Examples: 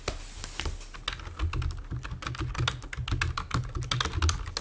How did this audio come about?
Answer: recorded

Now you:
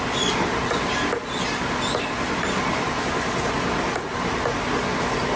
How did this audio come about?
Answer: recorded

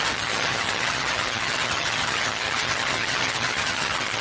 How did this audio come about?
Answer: remade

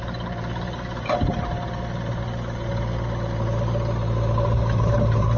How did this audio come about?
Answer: recorded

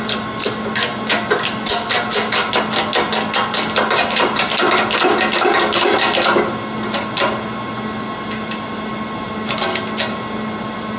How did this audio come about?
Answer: recorded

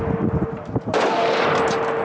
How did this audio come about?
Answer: recorded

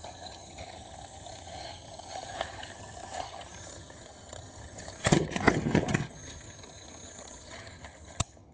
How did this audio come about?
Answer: remade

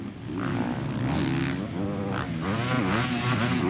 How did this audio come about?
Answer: recorded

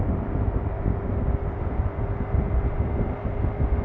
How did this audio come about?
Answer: recorded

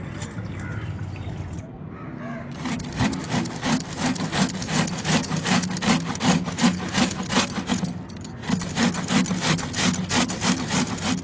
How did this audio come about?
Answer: recorded